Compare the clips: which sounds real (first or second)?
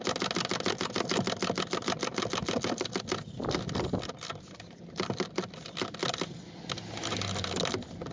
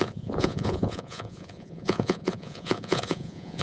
first